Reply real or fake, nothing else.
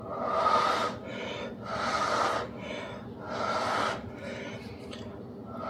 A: real